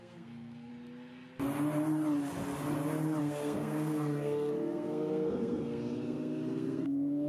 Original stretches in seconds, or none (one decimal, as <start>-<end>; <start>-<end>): 0.7-3.2